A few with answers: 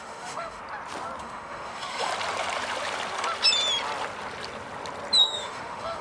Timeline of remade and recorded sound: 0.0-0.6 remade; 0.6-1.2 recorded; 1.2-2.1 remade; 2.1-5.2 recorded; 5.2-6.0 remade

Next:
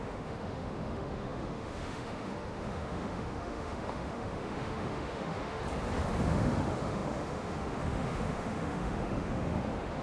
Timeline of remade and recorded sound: 0.0-5.6 remade; 5.6-6.2 recorded; 6.2-10.0 remade

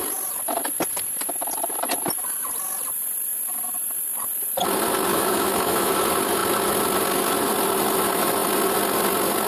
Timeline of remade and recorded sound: 0.0-5.1 recorded; 5.1-6.0 remade; 6.0-9.5 recorded

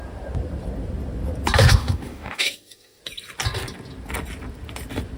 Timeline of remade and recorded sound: 0.0-1.6 recorded; 1.6-3.0 remade; 3.0-5.2 recorded

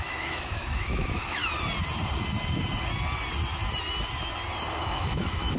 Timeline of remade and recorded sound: 0.0-1.4 remade; 1.4-4.8 recorded; 4.8-5.6 remade

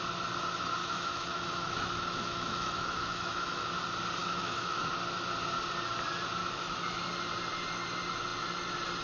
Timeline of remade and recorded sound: 0.0-0.8 recorded; 0.8-3.7 remade; 3.7-4.2 recorded; 4.2-4.8 remade; 4.8-6.4 recorded; 6.4-7.0 remade; 7.0-9.0 recorded

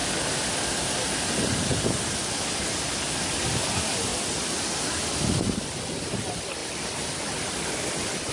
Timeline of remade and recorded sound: 0.0-8.3 recorded

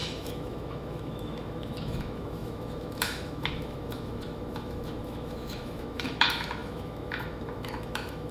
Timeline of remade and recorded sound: 0.0-8.3 remade